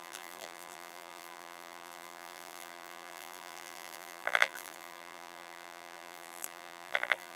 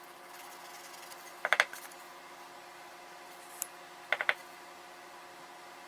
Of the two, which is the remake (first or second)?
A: first